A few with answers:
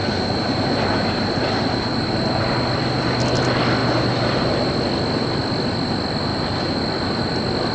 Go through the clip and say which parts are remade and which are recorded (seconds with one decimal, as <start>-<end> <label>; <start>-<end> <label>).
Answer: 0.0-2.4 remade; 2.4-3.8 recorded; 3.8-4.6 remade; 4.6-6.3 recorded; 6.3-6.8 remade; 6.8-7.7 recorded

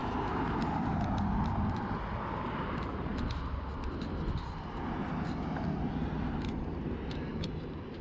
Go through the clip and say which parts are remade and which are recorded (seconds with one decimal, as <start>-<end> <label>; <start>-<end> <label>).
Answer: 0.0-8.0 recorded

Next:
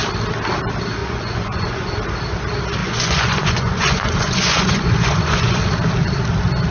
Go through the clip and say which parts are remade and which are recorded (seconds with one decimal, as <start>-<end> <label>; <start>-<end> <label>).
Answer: 0.0-1.0 recorded; 1.0-1.9 remade; 1.9-2.8 recorded; 2.8-5.6 remade; 5.6-6.7 recorded

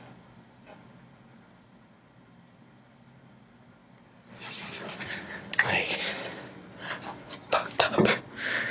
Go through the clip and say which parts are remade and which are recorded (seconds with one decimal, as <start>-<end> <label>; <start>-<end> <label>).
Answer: 0.0-8.7 recorded